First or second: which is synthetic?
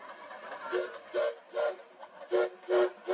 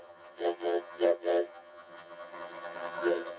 second